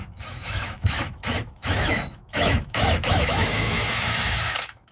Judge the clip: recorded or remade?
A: remade